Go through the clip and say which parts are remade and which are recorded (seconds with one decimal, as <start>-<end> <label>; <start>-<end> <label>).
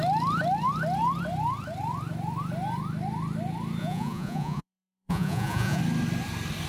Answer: 0.0-3.8 recorded; 3.8-5.8 remade; 5.8-6.7 recorded